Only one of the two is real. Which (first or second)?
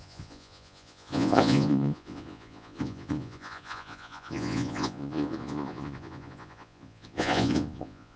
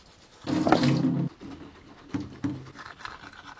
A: second